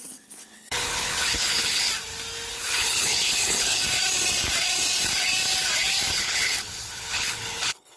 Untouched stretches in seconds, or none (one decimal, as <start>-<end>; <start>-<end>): 1.9-2.5; 3.8-6.1